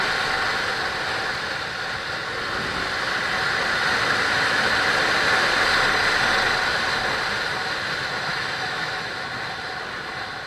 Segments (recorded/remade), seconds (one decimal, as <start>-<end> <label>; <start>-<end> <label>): 0.0-8.3 recorded; 8.3-9.1 remade; 9.1-10.5 recorded